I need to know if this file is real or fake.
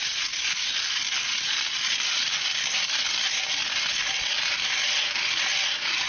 real